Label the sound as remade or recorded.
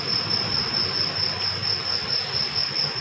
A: recorded